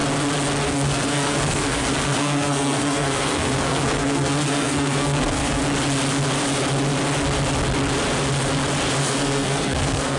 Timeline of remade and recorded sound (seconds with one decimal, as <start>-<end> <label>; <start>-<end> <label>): 0.0-0.7 recorded; 0.7-5.6 remade; 5.6-9.0 recorded; 9.0-10.2 remade